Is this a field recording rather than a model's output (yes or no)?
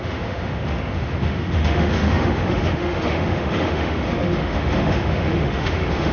no